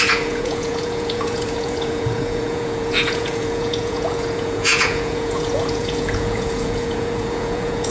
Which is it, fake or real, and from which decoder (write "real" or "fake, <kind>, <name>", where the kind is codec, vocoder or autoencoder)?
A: fake, vocoder, Vocos